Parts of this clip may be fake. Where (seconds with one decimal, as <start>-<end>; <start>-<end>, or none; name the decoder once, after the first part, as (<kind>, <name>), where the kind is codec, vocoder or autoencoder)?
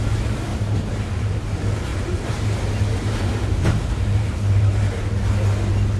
0.5-1.4 (vocoder, BigVGAN v2); 1.9-4.9